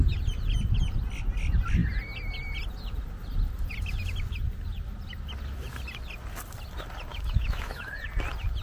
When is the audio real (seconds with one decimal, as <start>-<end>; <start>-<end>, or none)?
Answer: 0.0-7.1; 7.9-8.6